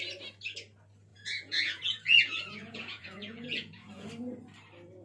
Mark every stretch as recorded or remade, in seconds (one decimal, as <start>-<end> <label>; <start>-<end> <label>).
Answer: 0.0-1.1 recorded; 1.1-4.1 remade; 4.1-5.0 recorded